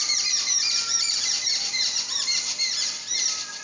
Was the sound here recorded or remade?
remade